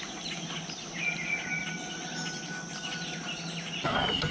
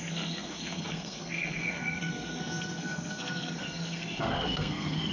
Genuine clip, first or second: first